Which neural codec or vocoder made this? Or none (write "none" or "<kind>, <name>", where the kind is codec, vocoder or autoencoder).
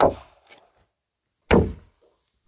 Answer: none